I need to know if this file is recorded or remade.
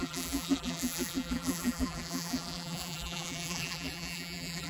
remade